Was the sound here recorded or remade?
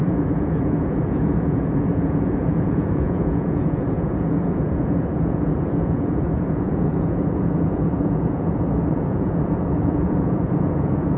remade